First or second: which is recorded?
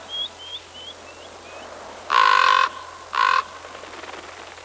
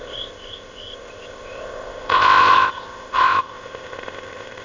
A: first